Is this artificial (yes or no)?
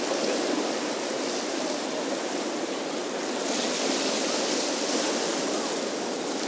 no